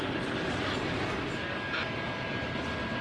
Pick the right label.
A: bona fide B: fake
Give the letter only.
A